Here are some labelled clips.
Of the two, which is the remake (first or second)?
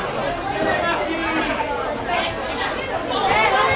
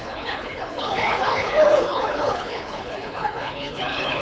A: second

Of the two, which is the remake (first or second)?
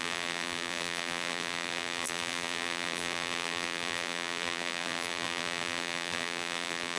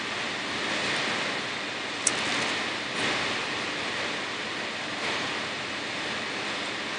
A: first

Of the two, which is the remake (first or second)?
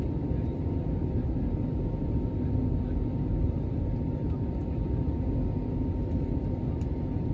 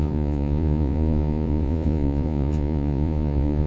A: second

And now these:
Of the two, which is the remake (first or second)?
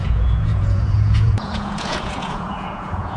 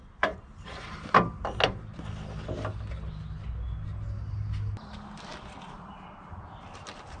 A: first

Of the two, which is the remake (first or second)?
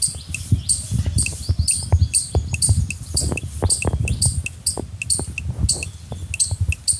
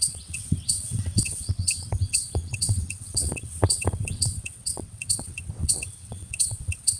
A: second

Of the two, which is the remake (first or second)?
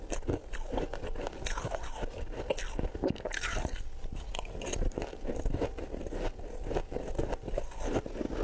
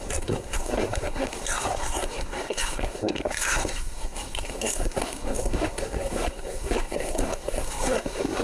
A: second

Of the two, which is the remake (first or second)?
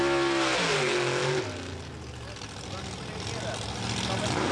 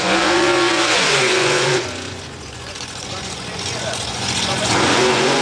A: second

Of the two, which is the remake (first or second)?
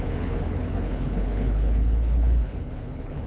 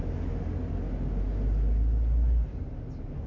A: first